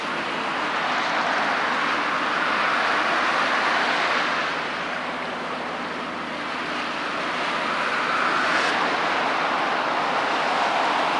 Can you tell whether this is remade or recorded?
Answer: recorded